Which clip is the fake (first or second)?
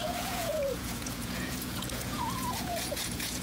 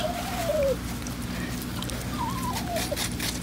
first